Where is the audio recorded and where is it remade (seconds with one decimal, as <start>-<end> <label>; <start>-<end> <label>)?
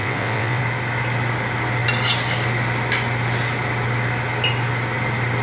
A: 0.0-0.6 remade; 0.6-5.4 recorded